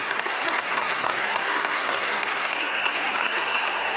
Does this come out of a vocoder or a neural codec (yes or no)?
yes